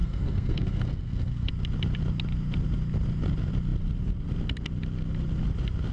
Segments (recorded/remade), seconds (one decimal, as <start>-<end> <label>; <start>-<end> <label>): 0.0-1.5 remade; 1.5-5.9 recorded